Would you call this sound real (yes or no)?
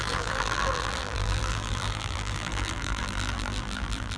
no